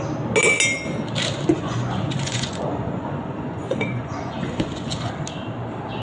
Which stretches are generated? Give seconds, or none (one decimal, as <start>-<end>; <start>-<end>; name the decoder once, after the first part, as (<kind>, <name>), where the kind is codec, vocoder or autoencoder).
1.5-5.1 (vocoder, Vocos)